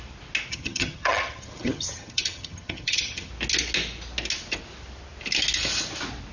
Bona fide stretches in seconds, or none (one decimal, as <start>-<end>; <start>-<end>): 0.0-0.5; 3.3-6.3